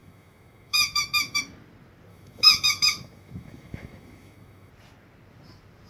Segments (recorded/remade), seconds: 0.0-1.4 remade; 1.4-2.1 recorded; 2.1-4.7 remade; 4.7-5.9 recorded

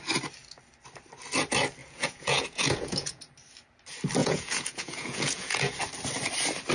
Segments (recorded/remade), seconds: 0.0-1.8 recorded; 1.8-3.2 remade; 3.2-4.2 recorded; 4.2-5.7 remade; 5.7-6.7 recorded

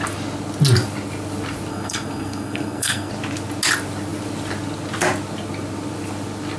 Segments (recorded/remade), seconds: 0.0-1.7 recorded; 1.7-3.1 remade; 3.1-6.6 recorded

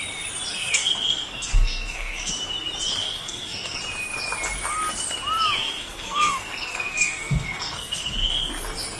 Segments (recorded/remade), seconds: 0.0-0.5 recorded; 0.5-2.3 remade; 2.3-3.0 recorded; 3.0-3.8 remade; 3.8-5.6 recorded; 5.6-8.5 remade; 8.5-9.0 recorded

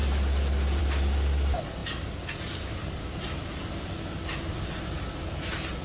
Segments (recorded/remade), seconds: 0.0-5.8 recorded

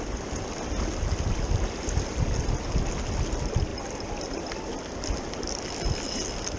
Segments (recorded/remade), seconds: 0.0-6.6 recorded